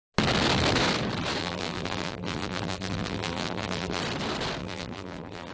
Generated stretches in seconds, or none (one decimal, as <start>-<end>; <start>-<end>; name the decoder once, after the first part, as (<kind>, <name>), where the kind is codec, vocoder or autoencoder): 1.4-4.0 (vocoder, BigVGAN v2); 4.6-5.5